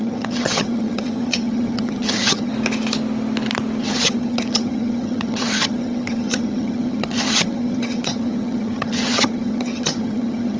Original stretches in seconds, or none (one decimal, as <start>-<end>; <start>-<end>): 2.5-3.8